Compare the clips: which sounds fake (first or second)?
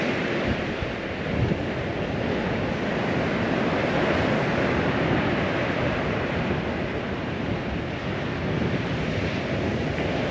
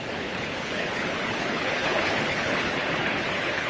second